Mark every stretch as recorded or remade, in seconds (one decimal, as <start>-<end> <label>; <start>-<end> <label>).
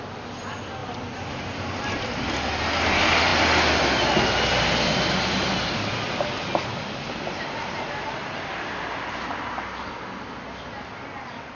0.0-11.5 recorded